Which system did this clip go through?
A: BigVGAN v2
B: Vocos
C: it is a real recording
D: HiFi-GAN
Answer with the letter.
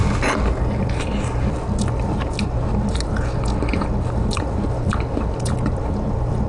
C